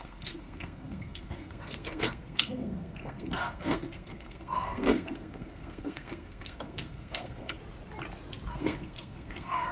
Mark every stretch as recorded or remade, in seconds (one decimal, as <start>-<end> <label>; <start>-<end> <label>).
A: 0.0-7.6 remade; 7.6-8.5 recorded; 8.5-9.7 remade